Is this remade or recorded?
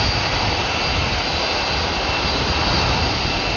recorded